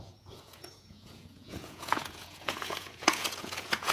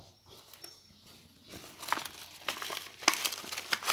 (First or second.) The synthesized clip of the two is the first